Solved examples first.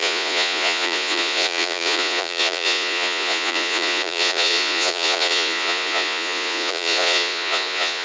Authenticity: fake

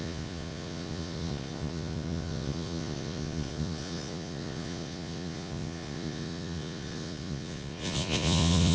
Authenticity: fake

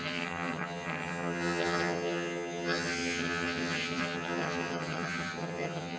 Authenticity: fake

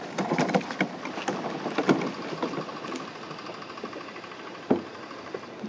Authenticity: real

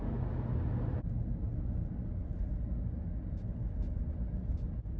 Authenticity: real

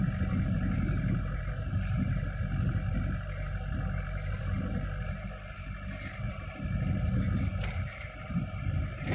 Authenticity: real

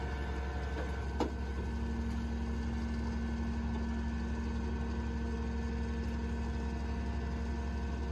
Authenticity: real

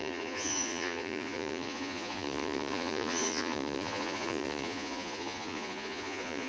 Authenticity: fake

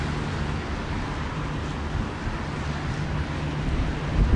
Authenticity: real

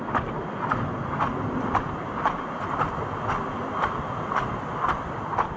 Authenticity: real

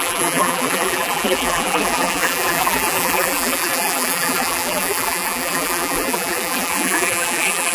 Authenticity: fake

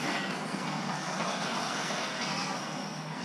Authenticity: fake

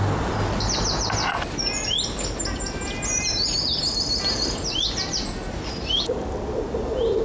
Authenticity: real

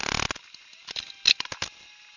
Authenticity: real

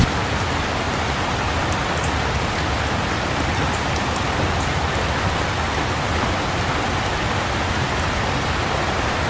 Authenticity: real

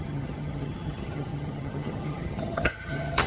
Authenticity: fake